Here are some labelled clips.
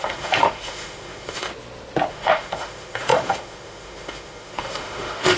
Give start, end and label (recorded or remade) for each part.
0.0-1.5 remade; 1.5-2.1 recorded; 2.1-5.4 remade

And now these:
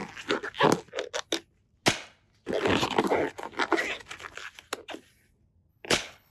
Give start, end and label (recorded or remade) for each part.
0.0-5.7 recorded; 5.7-6.3 remade

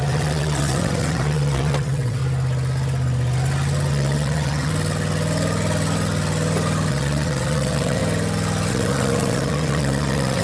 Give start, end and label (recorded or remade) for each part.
0.0-2.2 remade; 2.2-3.9 recorded; 3.9-4.7 remade; 4.7-6.9 recorded; 6.9-8.0 remade; 8.0-8.7 recorded; 8.7-10.4 remade

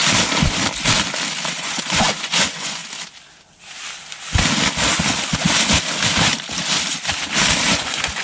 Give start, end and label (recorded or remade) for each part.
0.0-1.5 recorded; 1.5-2.8 remade; 2.8-7.7 recorded; 7.7-8.2 remade

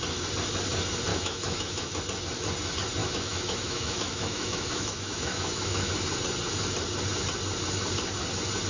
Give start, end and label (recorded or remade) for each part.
0.0-1.1 recorded; 1.1-2.0 remade; 2.0-3.0 recorded; 3.0-5.9 remade; 5.9-8.7 recorded

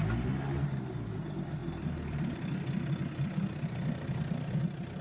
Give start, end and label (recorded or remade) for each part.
0.0-5.0 recorded

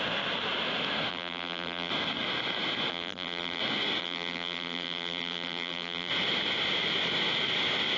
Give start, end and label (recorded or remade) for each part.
0.0-1.1 recorded; 1.1-1.9 remade; 1.9-2.9 recorded; 2.9-3.6 remade; 3.6-4.0 recorded; 4.0-6.1 remade; 6.1-8.0 recorded

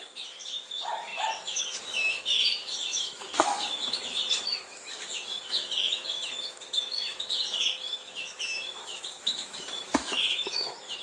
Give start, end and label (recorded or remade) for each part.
0.0-11.0 remade